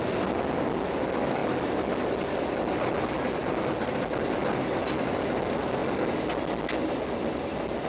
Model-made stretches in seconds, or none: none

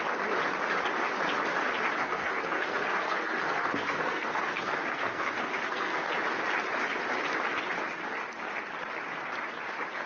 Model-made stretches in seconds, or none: 2.0-6.1

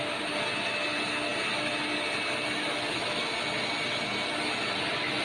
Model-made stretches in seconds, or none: none